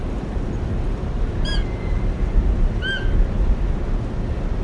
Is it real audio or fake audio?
real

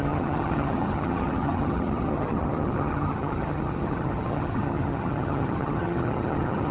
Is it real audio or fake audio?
fake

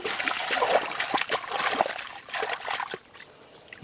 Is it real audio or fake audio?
real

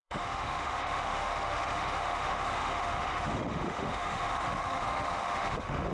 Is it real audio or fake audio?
fake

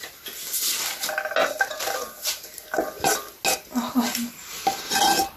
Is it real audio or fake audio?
real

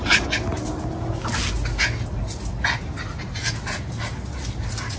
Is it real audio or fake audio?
real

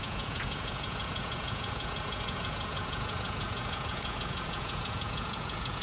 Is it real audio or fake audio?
fake